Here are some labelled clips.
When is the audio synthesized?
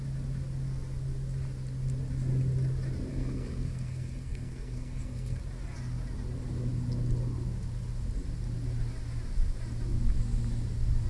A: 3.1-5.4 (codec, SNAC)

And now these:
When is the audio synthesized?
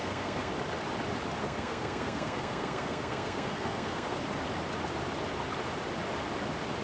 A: 0.0-0.5 (codec, SNAC); 1.4-4.2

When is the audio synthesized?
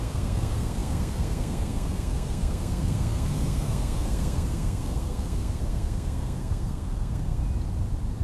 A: 0.0-7.4 (codec, SNAC)